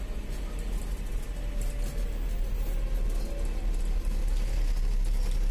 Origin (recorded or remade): recorded